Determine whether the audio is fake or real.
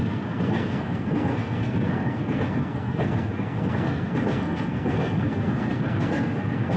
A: fake